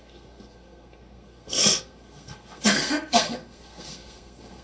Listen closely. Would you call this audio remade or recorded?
remade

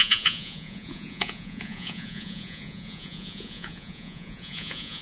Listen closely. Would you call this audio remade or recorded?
remade